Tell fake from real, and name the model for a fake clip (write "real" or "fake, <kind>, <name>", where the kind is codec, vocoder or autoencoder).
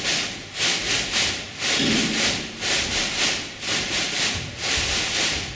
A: real